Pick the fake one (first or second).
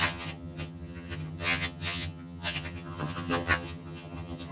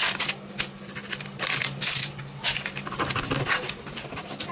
first